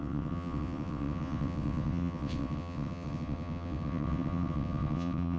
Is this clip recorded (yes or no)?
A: no